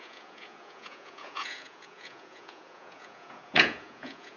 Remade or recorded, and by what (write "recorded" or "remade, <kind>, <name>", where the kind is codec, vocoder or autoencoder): remade, vocoder, Vocos